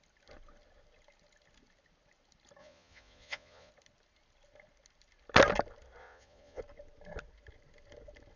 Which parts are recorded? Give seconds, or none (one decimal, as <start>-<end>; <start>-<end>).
0.0-2.6; 3.7-6.0; 6.6-8.4